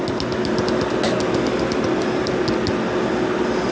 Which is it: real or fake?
real